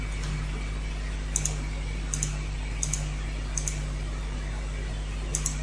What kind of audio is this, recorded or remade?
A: recorded